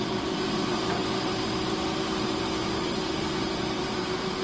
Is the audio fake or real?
fake